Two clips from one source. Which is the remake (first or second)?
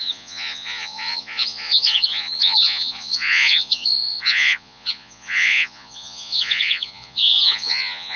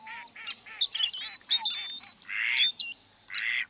first